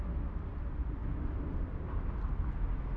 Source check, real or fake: real